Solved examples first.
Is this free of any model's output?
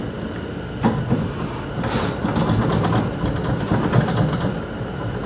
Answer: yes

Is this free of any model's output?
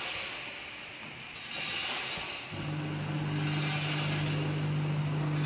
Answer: yes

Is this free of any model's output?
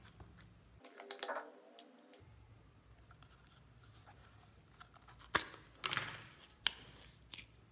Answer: yes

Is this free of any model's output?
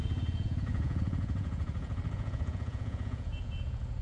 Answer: no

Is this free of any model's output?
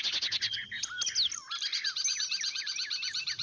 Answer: yes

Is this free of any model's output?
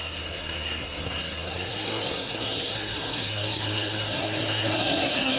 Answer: no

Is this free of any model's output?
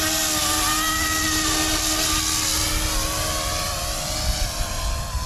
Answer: yes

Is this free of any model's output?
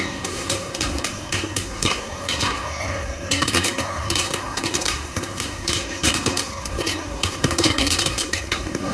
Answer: no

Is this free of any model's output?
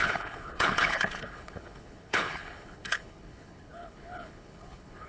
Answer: no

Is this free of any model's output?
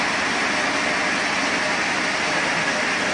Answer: yes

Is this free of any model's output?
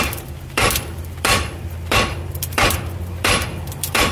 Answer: no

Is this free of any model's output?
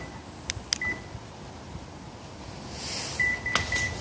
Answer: yes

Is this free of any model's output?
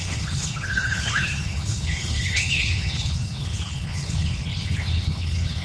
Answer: no